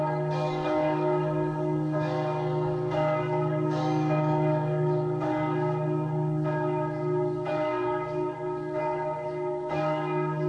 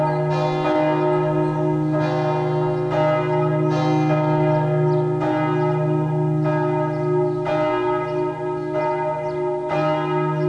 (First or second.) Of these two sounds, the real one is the second